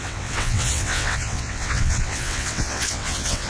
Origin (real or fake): fake